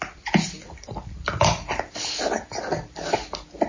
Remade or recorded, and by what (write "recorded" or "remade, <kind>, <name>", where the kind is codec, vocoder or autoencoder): recorded